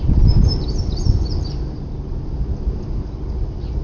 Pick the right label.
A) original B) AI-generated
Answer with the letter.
A